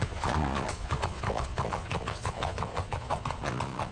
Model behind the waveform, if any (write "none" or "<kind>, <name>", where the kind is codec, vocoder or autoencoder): vocoder, Vocos